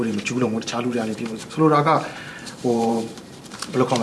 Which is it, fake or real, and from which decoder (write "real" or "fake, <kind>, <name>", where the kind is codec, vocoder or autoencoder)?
fake, vocoder, BigVGAN v2